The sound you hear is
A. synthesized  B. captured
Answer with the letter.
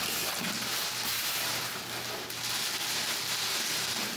B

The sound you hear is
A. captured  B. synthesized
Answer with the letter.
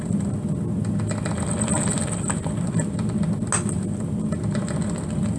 A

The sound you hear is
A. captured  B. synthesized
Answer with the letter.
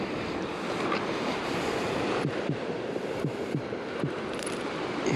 B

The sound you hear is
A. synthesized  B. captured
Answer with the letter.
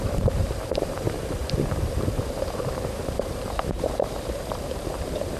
A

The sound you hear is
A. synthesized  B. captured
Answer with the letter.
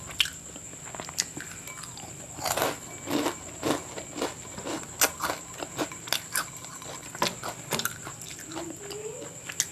B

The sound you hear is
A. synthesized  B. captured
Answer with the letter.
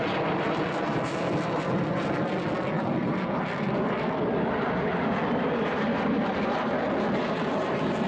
A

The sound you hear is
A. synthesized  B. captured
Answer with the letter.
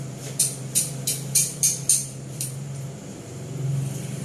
A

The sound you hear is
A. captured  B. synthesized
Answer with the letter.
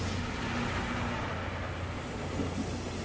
A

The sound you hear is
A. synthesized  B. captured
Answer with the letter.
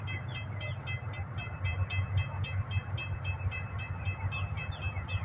B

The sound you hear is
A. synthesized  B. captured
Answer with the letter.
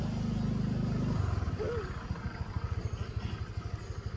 B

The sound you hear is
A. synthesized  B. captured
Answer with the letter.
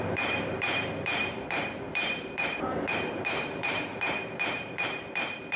A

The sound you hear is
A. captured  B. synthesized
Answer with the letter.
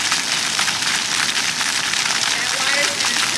A